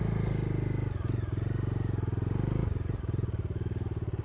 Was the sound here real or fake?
real